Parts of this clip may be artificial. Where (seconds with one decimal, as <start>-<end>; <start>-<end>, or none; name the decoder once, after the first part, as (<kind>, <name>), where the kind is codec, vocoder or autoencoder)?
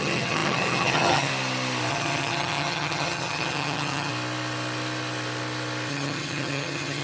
0.0-1.3 (vocoder, HiFi-GAN); 1.9-4.1; 5.9-7.0